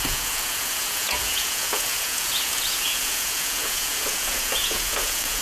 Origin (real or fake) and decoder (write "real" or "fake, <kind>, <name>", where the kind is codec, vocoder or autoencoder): fake, vocoder, Vocos